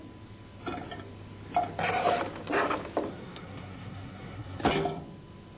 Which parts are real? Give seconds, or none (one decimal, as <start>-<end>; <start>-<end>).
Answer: 0.0-3.1; 4.6-5.6